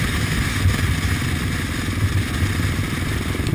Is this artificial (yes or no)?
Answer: no